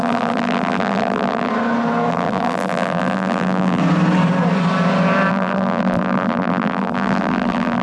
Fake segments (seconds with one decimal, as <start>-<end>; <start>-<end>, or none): 0.0-1.5; 2.1-3.8; 5.3-7.8